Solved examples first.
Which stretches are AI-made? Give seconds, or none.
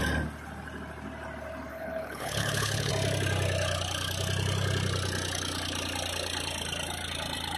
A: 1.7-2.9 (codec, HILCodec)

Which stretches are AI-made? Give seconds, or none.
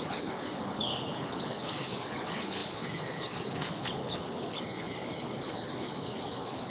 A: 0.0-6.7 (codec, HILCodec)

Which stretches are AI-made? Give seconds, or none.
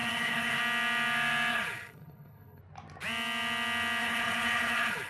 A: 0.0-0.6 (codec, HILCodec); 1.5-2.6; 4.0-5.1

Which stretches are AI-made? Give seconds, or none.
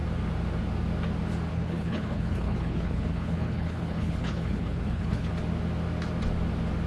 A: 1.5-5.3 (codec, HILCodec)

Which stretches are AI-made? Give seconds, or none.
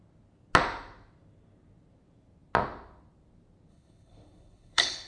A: 3.7-5.1 (codec, HILCodec)